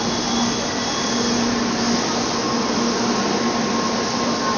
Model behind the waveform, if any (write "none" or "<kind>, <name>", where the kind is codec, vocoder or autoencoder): none